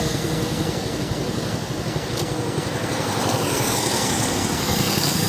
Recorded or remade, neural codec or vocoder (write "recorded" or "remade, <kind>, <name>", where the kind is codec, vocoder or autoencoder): remade, codec, SNAC